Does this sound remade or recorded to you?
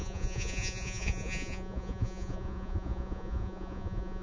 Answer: remade